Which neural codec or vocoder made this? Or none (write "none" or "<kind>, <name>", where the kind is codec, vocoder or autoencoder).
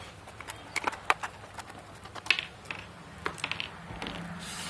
none